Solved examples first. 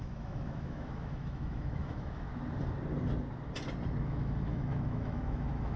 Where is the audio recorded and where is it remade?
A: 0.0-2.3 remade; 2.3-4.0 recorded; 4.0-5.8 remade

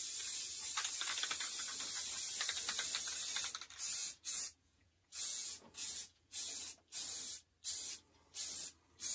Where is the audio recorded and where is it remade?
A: 0.0-4.0 recorded; 4.0-6.6 remade; 6.6-9.1 recorded

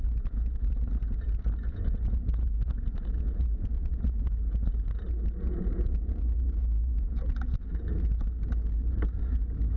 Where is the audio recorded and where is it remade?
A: 0.0-4.7 remade; 4.7-5.4 recorded; 5.4-8.1 remade; 8.1-9.8 recorded

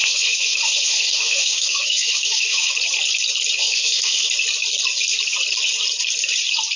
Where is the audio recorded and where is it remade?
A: 0.0-2.7 remade; 2.7-3.6 recorded; 3.6-4.3 remade; 4.3-6.8 recorded

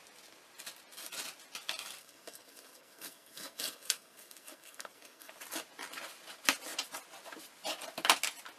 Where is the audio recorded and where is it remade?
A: 0.0-2.0 recorded; 2.0-5.3 remade; 5.3-8.6 recorded